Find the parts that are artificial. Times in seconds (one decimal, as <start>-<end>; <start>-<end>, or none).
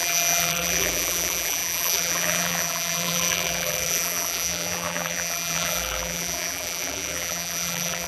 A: 0.0-8.1